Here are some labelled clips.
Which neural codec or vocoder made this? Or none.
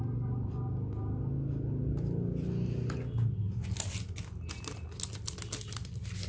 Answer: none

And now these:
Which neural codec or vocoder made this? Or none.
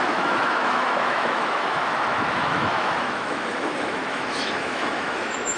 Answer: autoencoder, DAC-VAE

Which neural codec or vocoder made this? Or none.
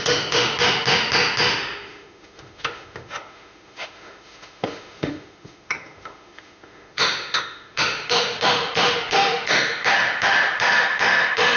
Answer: autoencoder, DAC-VAE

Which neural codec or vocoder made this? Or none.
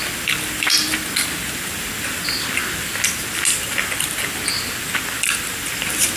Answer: none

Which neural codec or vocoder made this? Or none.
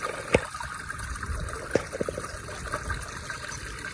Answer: none